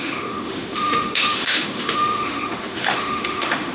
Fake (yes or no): yes